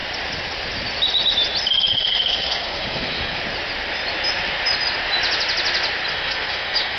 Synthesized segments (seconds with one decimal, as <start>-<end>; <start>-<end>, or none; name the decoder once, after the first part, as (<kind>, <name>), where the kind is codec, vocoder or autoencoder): 1.7-3.4 (codec, SNAC); 6.1-7.0